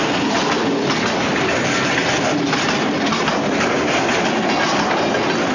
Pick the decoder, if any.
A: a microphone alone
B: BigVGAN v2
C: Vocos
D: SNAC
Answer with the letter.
A